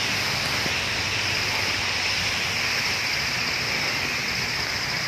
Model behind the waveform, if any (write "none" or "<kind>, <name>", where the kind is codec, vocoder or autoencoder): none